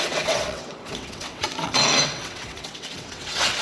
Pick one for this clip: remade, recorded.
remade